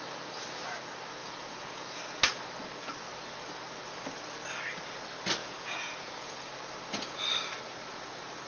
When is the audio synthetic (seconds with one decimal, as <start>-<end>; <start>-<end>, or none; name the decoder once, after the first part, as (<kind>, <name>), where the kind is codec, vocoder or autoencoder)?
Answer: 1.2-2.0 (vocoder, Vocos); 5.4-6.5